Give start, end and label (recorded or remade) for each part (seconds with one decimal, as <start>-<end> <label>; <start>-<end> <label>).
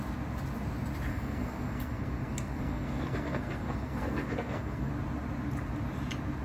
0.0-1.1 recorded; 1.1-4.9 remade; 4.9-6.4 recorded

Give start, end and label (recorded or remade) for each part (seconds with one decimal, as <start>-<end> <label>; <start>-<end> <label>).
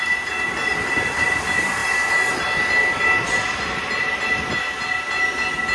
0.0-5.7 recorded